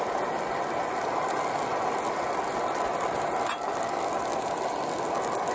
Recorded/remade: recorded